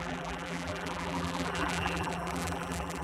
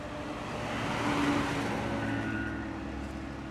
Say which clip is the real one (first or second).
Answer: second